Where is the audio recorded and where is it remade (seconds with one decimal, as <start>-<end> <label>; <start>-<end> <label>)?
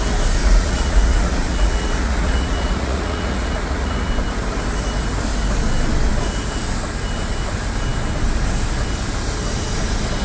0.0-0.4 recorded; 0.4-4.1 remade; 4.1-10.2 recorded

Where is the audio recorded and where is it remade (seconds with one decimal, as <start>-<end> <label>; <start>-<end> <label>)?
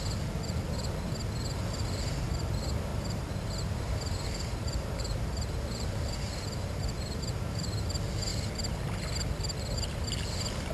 0.0-2.9 recorded; 2.9-7.9 remade; 7.9-10.7 recorded